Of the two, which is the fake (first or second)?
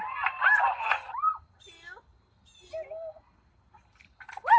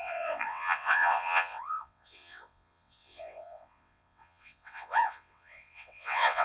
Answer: second